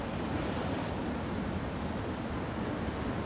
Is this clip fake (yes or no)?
no